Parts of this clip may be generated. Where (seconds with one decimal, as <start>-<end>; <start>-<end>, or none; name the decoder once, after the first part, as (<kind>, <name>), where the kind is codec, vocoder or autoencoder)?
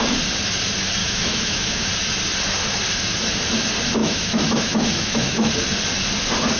1.0-1.9 (autoencoder, DAC-VAE); 4.0-5.5